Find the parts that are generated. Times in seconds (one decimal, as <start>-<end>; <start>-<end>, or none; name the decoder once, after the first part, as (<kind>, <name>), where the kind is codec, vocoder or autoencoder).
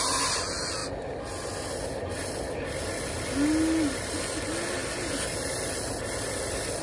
none